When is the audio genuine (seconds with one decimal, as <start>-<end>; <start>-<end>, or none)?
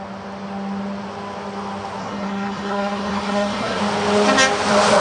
0.0-2.0; 3.8-5.0